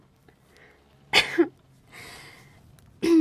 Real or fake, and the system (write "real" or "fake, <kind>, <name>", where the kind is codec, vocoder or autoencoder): real